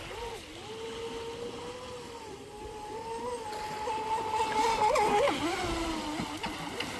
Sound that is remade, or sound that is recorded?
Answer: recorded